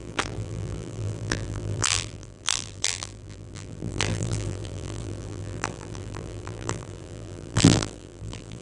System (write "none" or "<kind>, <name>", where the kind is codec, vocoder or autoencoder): vocoder, BigVGAN v2